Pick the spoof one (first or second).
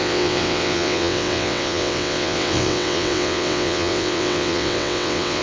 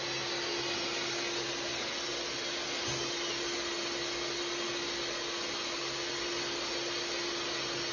first